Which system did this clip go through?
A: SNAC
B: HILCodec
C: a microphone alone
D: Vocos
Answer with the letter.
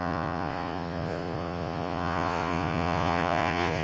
D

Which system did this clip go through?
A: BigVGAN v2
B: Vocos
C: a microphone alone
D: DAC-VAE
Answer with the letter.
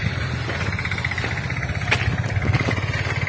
C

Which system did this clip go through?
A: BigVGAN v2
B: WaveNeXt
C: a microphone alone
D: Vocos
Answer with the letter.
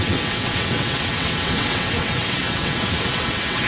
B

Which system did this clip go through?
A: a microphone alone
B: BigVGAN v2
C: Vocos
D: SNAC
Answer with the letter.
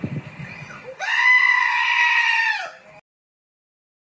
A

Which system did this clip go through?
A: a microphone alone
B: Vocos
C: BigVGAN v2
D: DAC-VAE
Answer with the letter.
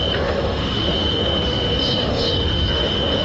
D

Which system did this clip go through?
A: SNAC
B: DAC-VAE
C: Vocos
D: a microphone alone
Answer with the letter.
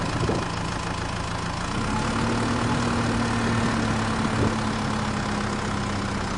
D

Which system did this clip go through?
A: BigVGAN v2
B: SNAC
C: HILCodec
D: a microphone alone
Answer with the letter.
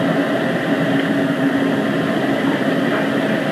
D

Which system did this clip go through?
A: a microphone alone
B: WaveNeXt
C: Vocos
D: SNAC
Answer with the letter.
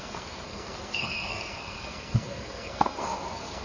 D